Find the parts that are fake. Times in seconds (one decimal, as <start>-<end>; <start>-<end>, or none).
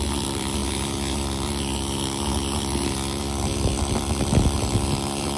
0.0-0.6; 3.8-5.4